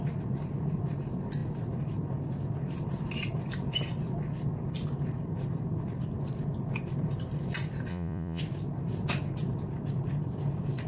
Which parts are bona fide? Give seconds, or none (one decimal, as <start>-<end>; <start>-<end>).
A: 0.0-7.9; 8.4-10.9